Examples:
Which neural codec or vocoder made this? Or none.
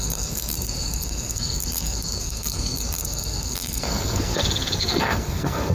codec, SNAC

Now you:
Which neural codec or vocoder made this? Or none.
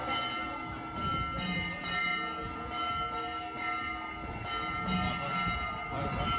none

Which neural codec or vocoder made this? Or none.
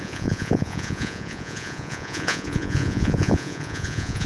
vocoder, Vocos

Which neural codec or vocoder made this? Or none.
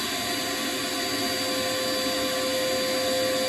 none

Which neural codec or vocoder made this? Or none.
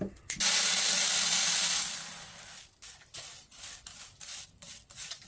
none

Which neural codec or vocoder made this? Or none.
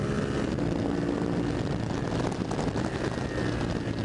none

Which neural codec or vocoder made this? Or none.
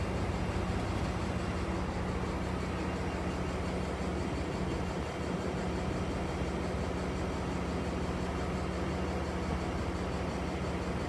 none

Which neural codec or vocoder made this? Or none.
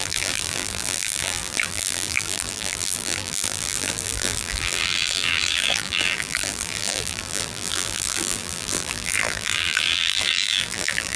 vocoder, BigVGAN v2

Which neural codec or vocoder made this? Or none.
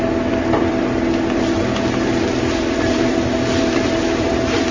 vocoder, BigVGAN v2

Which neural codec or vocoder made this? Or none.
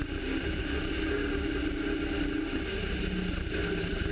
none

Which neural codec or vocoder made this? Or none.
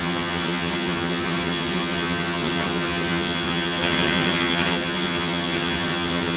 vocoder, HiFi-GAN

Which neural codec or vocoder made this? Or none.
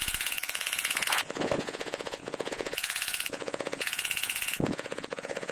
vocoder, Vocos